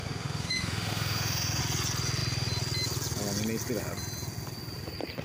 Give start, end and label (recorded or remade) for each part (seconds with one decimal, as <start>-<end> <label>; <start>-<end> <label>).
0.0-1.6 remade; 1.6-5.2 recorded